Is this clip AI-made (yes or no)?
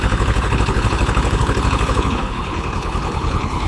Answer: yes